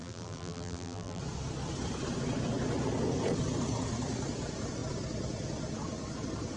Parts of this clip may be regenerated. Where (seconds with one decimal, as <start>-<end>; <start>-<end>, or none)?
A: 0.0-1.2